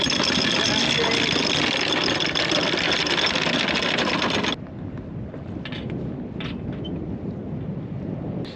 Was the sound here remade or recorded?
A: recorded